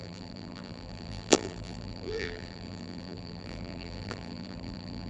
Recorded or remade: remade